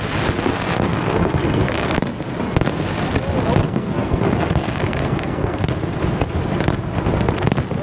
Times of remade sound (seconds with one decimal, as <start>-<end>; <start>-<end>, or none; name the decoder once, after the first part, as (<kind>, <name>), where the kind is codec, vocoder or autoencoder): 0.5-1.9 (codec, SNAC); 3.6-5.7